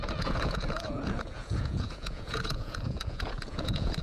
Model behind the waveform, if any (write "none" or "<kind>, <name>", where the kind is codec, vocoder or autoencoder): vocoder, Vocos